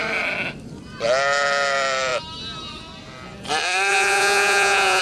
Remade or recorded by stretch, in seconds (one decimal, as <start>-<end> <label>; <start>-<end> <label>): 0.0-3.9 recorded; 3.9-5.0 remade